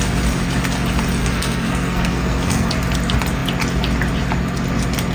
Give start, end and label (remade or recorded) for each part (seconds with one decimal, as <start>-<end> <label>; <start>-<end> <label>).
0.0-1.2 recorded; 1.2-2.7 remade; 2.7-5.1 recorded